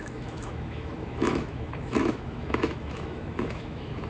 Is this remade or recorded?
remade